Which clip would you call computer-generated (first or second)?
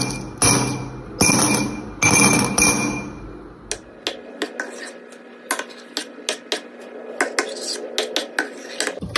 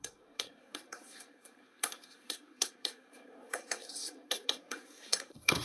second